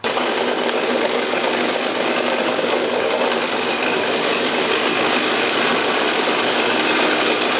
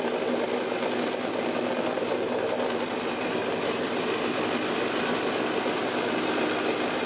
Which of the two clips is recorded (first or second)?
second